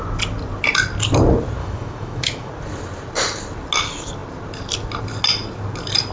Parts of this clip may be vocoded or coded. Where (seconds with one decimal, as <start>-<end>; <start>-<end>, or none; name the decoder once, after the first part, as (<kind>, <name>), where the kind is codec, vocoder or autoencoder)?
1.6-2.5 (autoencoder, DAC-VAE)